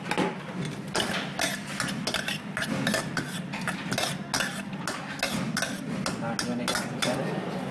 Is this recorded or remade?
recorded